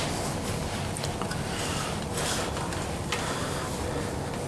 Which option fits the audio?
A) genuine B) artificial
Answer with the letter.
A